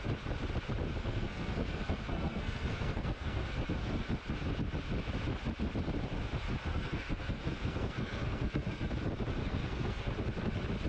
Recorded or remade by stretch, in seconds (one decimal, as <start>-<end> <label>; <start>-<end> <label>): 0.0-1.0 recorded; 1.0-4.1 remade; 4.1-6.7 recorded; 6.7-8.9 remade; 8.9-9.4 recorded; 9.4-10.1 remade; 10.1-10.9 recorded